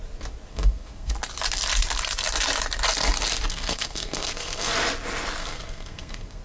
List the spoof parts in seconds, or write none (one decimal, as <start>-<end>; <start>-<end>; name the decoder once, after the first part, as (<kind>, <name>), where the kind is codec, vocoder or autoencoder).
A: 0.5-1.1 (codec, SNAC); 3.5-4.7; 5.4-6.4